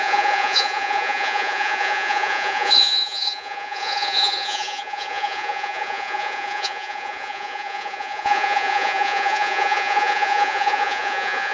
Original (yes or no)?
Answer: no